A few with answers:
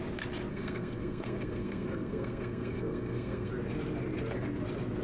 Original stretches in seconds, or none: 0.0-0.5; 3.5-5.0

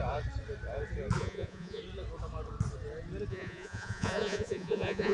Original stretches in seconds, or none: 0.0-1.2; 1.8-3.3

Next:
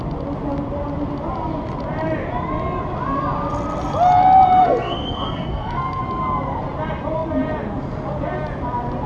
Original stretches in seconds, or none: 0.0-4.6; 6.0-9.1

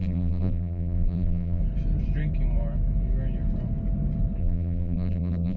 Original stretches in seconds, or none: 1.6-4.4